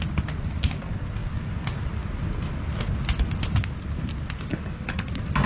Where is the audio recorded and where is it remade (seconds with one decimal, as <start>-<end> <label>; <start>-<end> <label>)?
0.0-4.5 recorded; 4.5-5.1 remade; 5.1-5.5 recorded

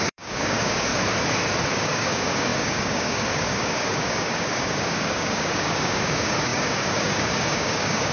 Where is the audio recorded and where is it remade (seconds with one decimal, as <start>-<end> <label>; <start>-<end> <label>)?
0.0-0.9 remade; 0.9-1.7 recorded; 1.7-8.1 remade

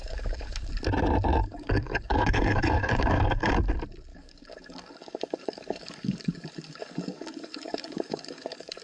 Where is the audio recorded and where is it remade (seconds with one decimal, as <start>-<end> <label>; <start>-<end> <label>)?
0.0-0.7 remade; 0.7-1.4 recorded; 1.4-3.5 remade; 3.5-4.1 recorded; 4.1-8.8 remade

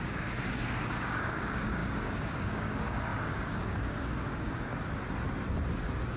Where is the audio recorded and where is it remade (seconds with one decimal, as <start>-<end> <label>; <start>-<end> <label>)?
0.0-4.7 remade; 4.7-6.2 recorded

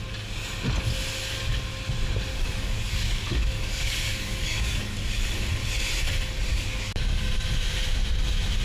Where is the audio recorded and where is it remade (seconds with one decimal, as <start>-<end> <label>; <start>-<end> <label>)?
0.0-2.3 recorded; 2.3-5.0 remade; 5.0-6.5 recorded; 6.5-7.3 remade; 7.3-8.6 recorded

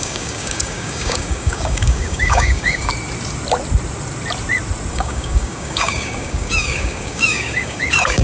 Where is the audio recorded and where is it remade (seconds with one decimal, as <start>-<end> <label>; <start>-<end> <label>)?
0.0-2.9 remade; 2.9-4.9 recorded; 4.9-8.2 remade

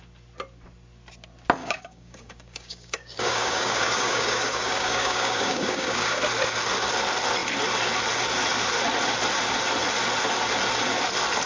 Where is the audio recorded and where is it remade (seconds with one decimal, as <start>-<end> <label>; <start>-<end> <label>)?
0.0-1.6 recorded; 1.6-6.2 remade; 6.2-11.5 recorded

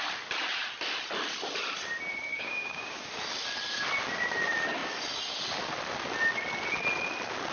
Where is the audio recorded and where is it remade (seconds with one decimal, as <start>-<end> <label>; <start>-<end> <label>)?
0.0-2.3 recorded; 2.3-3.0 remade; 3.0-7.5 recorded